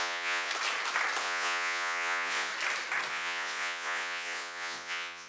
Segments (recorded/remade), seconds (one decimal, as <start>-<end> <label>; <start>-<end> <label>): 0.0-0.5 remade; 0.5-1.2 recorded; 1.2-2.5 remade; 2.5-3.1 recorded; 3.1-5.3 remade